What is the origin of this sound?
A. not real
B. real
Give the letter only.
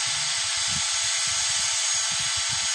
B